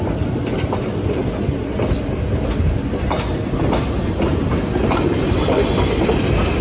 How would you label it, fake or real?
real